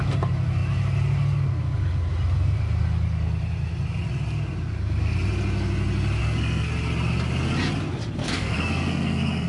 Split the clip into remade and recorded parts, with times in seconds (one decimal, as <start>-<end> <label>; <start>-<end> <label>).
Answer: 0.0-6.2 recorded; 6.2-6.7 remade; 6.7-8.2 recorded; 8.2-9.5 remade